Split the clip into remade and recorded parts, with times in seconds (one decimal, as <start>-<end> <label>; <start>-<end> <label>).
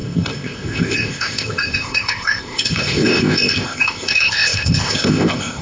0.0-5.6 remade